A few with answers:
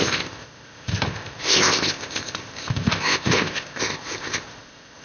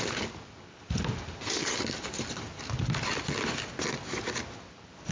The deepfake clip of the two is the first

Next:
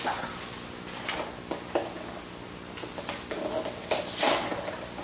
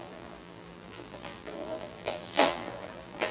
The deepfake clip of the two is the second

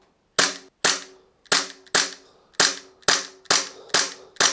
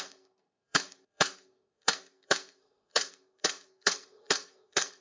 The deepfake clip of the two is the second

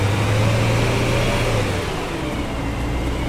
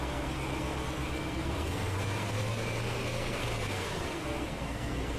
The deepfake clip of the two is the second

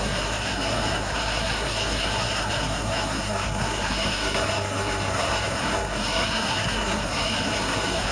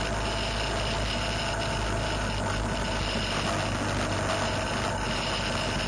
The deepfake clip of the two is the first